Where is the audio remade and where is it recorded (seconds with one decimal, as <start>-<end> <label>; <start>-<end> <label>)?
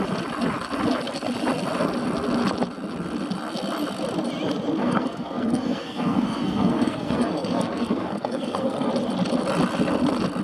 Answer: 0.0-4.8 recorded; 4.8-8.9 remade; 8.9-10.4 recorded